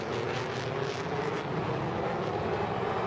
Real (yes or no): yes